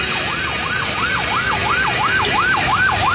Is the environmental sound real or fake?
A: real